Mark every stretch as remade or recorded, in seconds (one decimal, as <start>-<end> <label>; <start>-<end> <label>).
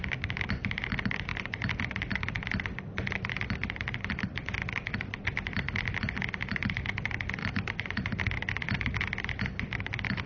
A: 0.0-10.3 recorded